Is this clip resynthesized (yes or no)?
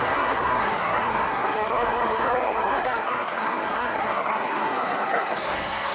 yes